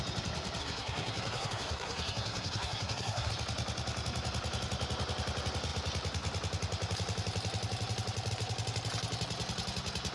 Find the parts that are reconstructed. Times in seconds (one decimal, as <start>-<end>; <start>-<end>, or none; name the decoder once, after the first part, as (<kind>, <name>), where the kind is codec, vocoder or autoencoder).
0.6-3.3 (codec, SNAC)